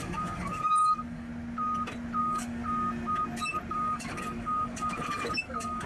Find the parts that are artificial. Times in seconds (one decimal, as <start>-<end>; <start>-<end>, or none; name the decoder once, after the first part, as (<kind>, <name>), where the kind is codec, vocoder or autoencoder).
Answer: 0.0-1.3 (codec, DAC); 2.2-2.6; 3.7-5.9